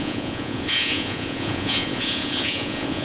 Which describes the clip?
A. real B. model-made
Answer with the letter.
B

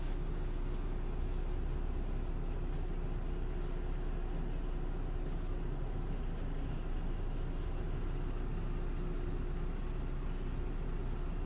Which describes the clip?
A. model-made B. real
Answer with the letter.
B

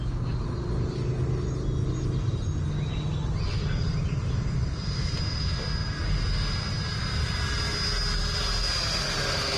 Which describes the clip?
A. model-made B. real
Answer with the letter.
B